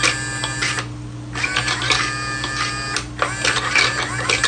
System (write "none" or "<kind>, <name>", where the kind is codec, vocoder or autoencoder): none